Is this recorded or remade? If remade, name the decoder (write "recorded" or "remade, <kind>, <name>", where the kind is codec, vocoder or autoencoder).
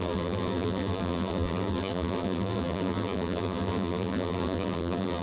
remade, vocoder, BigVGAN v2